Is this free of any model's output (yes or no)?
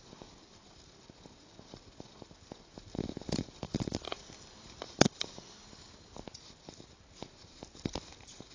yes